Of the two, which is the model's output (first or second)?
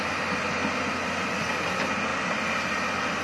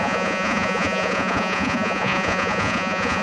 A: second